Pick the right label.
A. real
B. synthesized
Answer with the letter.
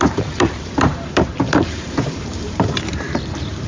B